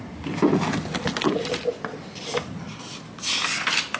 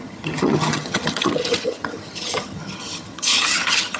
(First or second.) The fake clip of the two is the second